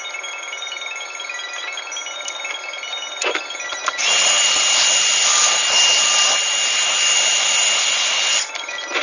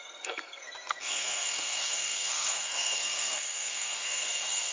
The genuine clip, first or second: first